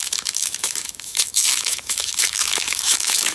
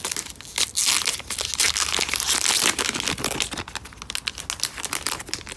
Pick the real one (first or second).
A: second